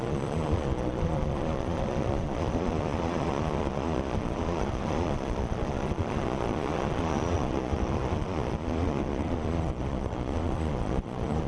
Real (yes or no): no